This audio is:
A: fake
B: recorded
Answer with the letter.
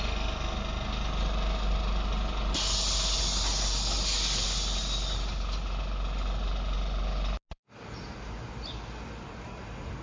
B